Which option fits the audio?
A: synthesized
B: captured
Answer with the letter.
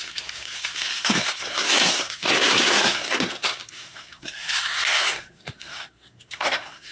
A